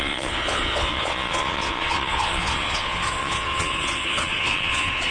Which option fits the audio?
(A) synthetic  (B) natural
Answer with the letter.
A